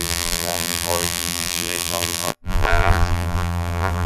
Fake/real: fake